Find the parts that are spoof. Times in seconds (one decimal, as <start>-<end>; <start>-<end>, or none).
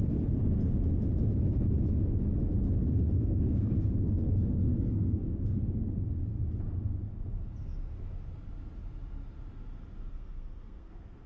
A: 2.8-5.2; 10.1-10.9